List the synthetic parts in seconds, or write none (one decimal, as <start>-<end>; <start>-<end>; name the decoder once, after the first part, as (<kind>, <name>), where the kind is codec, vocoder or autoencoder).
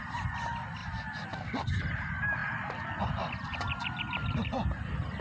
none